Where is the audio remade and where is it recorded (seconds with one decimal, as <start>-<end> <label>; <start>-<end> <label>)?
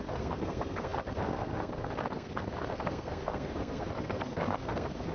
0.0-5.1 remade